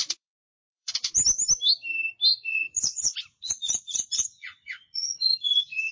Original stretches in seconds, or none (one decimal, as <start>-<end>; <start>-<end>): 0.9-2.3